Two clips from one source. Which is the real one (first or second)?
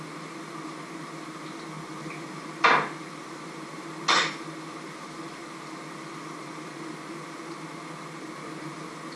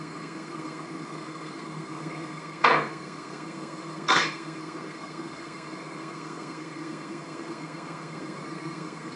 first